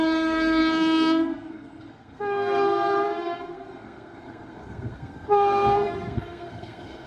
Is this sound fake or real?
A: fake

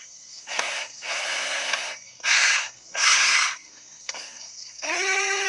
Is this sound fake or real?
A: fake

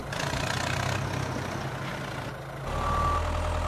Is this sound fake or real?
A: real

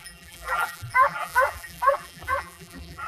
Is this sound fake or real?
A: fake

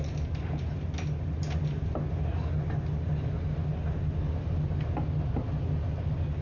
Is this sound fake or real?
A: real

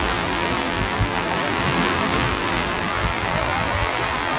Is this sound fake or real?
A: fake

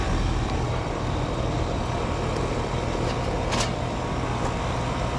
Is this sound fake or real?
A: real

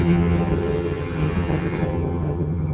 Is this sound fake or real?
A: fake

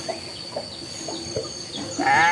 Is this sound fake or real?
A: real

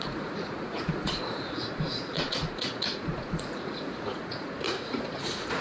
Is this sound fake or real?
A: fake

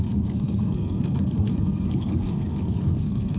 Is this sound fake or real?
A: fake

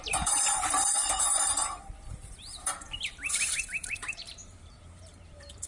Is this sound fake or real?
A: fake